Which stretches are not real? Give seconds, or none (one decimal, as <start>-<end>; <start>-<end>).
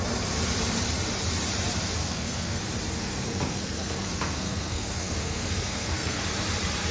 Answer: 2.0-2.6; 3.0-6.2